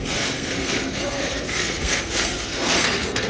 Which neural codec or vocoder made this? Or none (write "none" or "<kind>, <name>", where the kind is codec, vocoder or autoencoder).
codec, SNAC